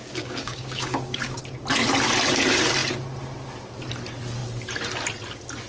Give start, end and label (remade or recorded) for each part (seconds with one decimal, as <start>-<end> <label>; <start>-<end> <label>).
0.0-1.4 remade; 1.4-5.7 recorded